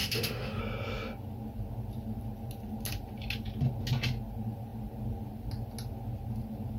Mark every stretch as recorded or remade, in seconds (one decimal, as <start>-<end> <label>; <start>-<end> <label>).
0.0-0.6 remade; 0.6-6.8 recorded